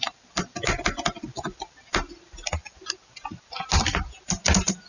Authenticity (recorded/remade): recorded